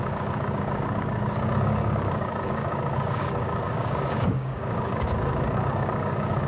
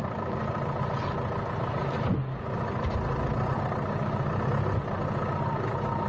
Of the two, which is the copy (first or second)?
first